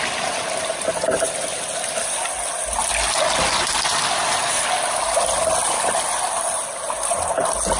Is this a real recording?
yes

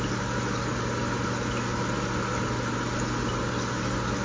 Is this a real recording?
yes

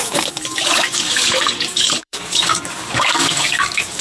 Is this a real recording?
no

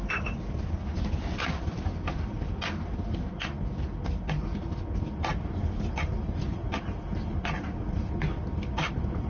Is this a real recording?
yes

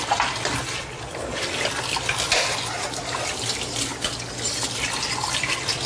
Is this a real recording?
yes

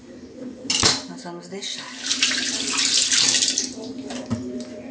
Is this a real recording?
yes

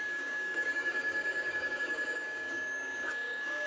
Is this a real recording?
no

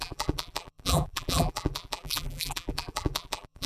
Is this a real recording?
no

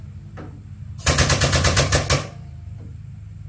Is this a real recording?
yes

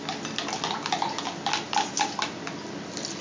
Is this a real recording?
yes